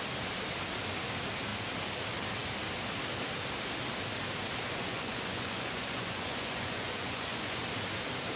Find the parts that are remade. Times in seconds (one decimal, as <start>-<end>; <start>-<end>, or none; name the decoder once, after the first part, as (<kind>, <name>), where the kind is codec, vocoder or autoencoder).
4.7-7.6 (vocoder, Vocos)